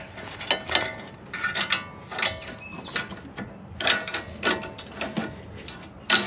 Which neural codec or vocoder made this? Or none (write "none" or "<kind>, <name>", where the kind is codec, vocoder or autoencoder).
none